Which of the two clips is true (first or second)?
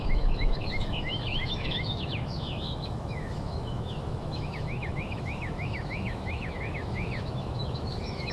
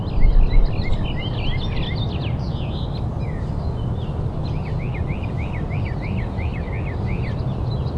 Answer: second